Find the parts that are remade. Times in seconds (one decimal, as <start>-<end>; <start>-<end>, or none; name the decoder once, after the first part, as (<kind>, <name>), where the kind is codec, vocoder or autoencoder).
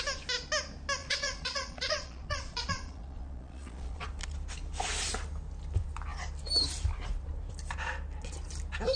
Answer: 1.0-4.1 (vocoder, Vocos)